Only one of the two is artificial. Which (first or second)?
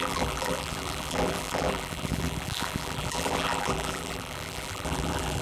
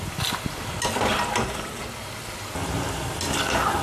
first